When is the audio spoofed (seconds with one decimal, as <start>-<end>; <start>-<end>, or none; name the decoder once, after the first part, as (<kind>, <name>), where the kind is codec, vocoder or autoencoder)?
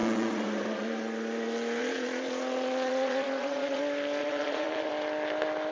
0.0-1.0 (vocoder, Vocos); 1.8-3.8; 4.2-4.9